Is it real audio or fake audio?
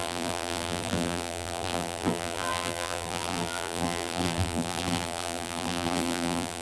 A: fake